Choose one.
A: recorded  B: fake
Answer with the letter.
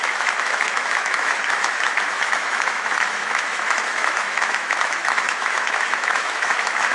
B